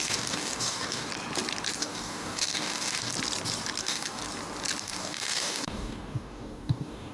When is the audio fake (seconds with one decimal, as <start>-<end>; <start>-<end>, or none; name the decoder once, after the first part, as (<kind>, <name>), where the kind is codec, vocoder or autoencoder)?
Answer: 0.0-1.1 (codec, DAC); 1.8-3.1; 3.8-4.2; 4.8-7.1